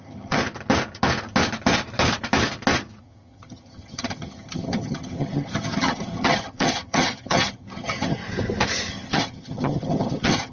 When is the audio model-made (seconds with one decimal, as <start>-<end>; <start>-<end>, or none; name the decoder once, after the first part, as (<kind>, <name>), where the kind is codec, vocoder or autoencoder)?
0.0-0.4 (vocoder, HiFi-GAN); 3.0-8.2; 8.9-10.5